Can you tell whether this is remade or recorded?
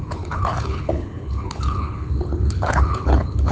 remade